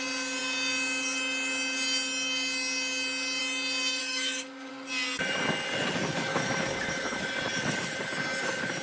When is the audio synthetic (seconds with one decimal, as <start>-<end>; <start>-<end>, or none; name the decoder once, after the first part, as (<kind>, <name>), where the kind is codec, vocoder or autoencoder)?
4.0-4.7 (autoencoder, DAC-VAE); 6.3-7.3